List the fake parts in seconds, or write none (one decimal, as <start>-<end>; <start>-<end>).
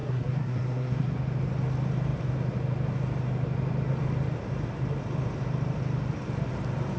0.0-1.1